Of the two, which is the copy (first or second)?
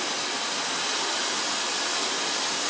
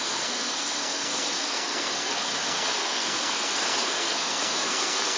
second